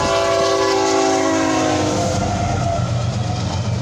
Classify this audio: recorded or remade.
recorded